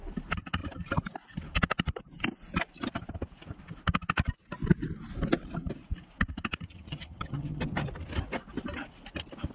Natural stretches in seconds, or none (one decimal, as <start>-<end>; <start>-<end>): 0.0-6.7; 7.6-9.5